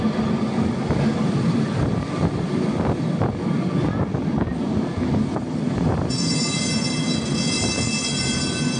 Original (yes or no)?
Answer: yes